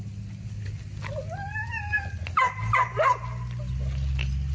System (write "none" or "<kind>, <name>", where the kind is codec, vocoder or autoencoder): none